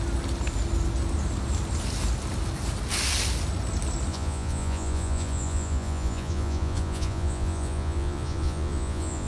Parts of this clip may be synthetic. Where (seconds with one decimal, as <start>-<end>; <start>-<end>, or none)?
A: 4.1-9.3